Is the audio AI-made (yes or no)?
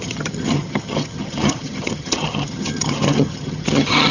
yes